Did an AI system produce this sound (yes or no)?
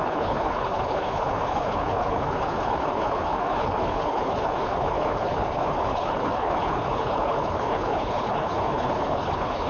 yes